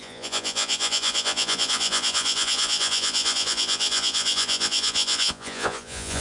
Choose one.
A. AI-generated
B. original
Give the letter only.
A